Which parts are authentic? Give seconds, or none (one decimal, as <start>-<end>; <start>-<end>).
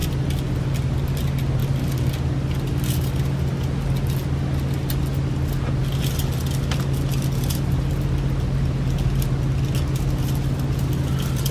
0.0-11.5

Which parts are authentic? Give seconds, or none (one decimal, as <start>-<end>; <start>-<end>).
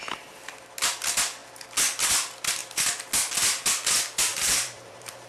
0.0-4.3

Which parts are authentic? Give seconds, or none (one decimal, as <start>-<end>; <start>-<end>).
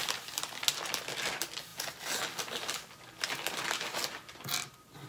0.0-5.1